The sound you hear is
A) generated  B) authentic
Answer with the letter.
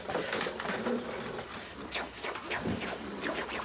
B